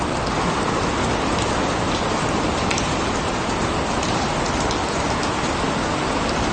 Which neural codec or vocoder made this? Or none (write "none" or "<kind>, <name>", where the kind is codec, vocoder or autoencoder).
none